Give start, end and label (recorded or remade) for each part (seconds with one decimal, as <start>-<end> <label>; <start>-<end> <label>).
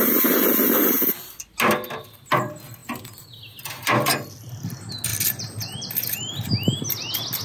0.0-5.1 recorded; 5.1-6.5 remade; 6.5-7.4 recorded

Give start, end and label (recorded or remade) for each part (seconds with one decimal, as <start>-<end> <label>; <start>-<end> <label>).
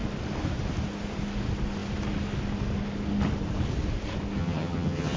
0.0-4.4 recorded; 4.4-5.2 remade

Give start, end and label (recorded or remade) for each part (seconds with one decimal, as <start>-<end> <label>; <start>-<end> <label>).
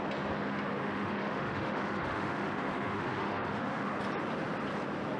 0.0-0.8 recorded; 0.8-3.9 remade; 3.9-5.2 recorded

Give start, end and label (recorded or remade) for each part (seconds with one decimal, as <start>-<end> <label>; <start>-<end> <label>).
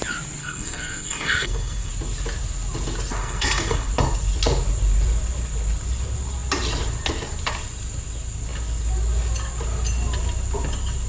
0.0-0.4 recorded; 0.4-1.9 remade; 1.9-3.2 recorded; 3.2-3.9 remade; 3.9-11.1 recorded